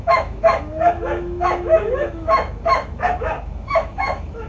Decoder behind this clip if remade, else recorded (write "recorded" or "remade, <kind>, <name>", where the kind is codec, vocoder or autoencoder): remade, autoencoder, DAC-VAE